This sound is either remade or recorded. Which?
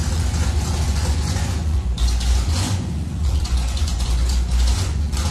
remade